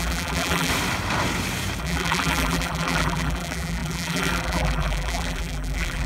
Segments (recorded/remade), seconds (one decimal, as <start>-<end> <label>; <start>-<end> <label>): 0.0-0.7 remade; 0.7-1.8 recorded; 1.8-6.1 remade